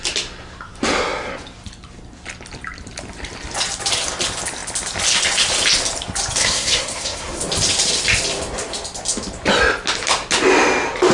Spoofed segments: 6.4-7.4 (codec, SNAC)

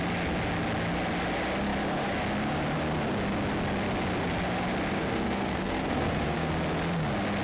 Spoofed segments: 4.9-6.5 (codec, SNAC)

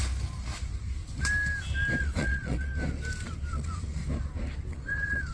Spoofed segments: 2.0-2.7 (vocoder, Vocos); 3.5-4.0; 4.7-5.3

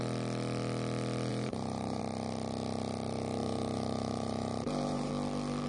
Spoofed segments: 1.3-2.0 (vocoder, BigVGAN v2); 3.4-5.1

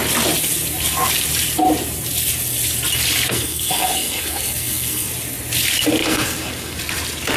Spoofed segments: 3.3-5.1 (codec, SNAC); 6.0-6.8